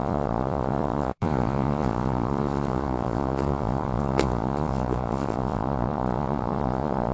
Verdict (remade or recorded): remade